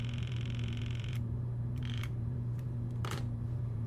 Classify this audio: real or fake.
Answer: fake